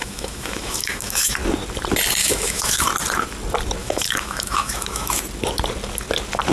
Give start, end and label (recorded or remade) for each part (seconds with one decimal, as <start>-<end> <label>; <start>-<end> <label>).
0.0-1.3 remade; 1.3-2.2 recorded; 2.2-2.9 remade; 2.9-3.8 recorded; 3.8-5.2 remade; 5.2-6.5 recorded